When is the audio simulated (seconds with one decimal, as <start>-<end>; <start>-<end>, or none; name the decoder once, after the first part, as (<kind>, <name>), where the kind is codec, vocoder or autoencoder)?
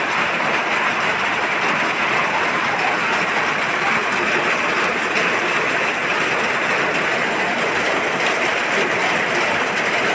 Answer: 0.0-0.6 (vocoder, BigVGAN v2); 3.4-4.1; 5.4-6.0; 6.6-7.1; 8.5-10.1